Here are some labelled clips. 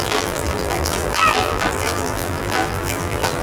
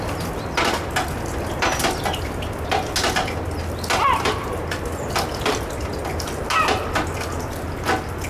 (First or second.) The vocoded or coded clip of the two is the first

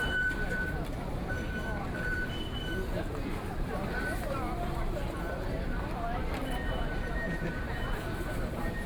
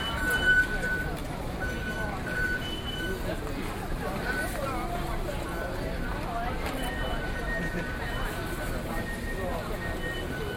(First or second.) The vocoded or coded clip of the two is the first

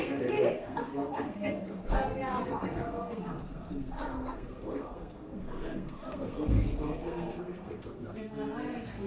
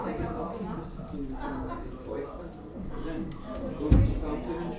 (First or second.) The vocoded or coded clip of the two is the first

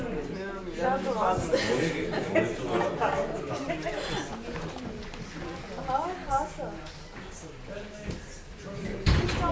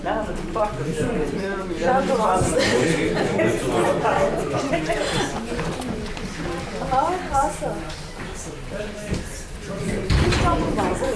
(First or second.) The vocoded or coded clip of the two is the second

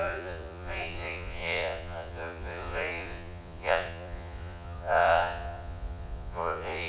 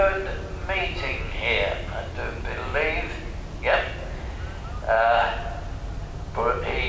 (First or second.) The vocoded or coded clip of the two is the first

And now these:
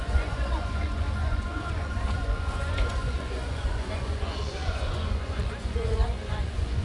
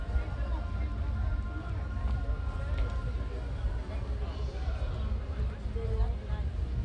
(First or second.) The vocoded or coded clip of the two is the first